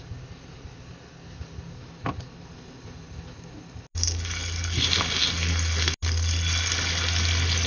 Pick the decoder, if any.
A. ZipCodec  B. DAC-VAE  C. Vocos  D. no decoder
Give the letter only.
D